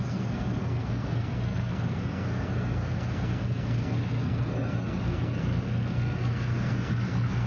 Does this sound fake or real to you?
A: fake